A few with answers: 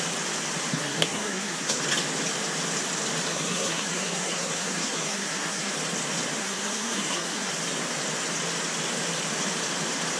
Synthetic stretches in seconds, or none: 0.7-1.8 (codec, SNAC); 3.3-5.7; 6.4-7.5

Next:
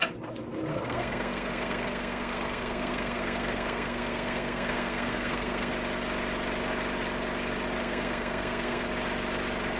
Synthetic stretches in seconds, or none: 0.7-5.7 (codec, SNAC); 7.8-8.8

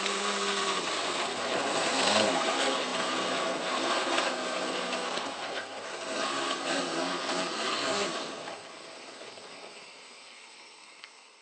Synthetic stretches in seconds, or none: 0.0-11.4 (codec, SNAC)

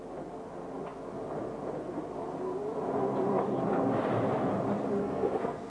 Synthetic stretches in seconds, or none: 5.0-5.7 (codec, SNAC)